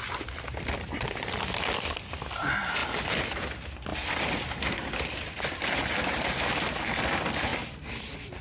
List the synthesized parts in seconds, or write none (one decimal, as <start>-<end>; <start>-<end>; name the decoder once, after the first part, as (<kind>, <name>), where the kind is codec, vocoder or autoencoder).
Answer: none